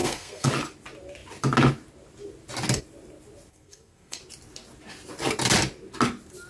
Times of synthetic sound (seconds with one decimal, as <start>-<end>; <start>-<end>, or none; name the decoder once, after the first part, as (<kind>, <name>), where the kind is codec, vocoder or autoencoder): 0.0-0.5 (codec, SNAC); 3.5-4.2